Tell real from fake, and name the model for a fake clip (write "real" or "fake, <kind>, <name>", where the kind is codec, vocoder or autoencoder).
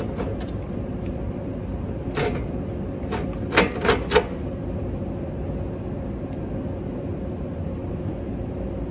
real